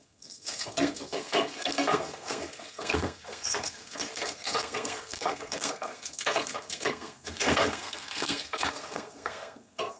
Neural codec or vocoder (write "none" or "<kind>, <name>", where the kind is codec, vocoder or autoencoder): codec, SNAC